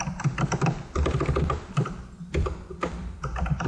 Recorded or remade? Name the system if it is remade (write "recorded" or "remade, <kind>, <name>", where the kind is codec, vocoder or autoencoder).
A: remade, vocoder, BigVGAN v2